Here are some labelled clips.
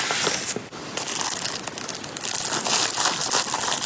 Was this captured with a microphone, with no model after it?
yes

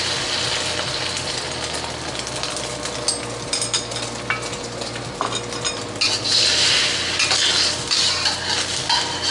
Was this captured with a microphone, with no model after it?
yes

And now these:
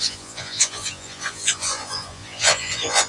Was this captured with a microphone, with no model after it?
no